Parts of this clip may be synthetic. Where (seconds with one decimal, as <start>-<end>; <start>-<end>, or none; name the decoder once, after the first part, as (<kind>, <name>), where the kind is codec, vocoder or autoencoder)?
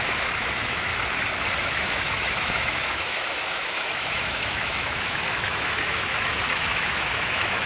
0.0-0.9 (autoencoder, DAC-VAE); 1.6-7.7